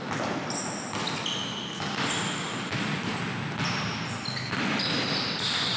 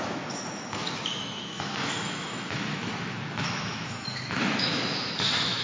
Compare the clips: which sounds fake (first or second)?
second